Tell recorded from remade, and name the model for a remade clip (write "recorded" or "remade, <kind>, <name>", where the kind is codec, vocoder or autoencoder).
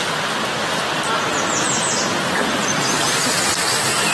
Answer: recorded